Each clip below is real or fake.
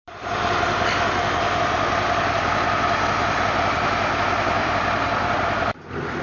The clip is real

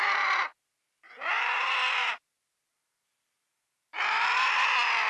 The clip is fake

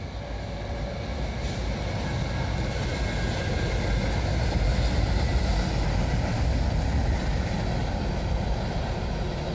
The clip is real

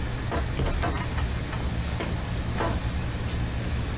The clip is real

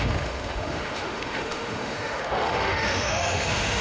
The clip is fake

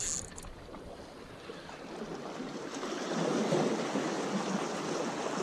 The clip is real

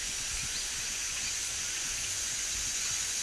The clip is fake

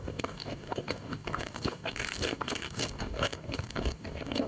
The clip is fake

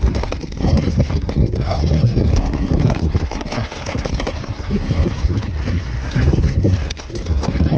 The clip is fake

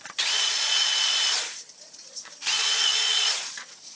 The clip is fake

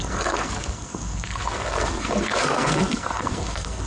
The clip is fake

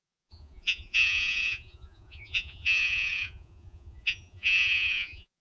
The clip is fake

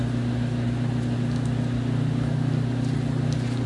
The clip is real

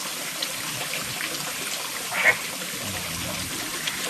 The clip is real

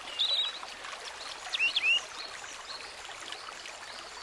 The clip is real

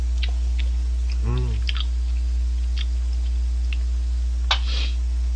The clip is real